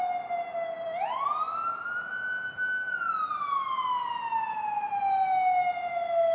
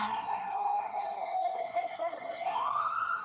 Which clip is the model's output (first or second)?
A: second